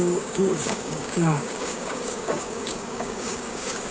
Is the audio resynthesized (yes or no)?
yes